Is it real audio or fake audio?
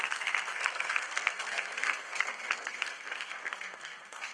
fake